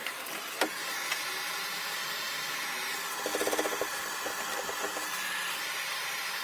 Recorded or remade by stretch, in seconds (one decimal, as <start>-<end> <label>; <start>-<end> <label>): 0.0-6.4 recorded